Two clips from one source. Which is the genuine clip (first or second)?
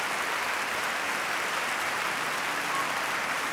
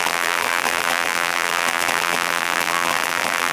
first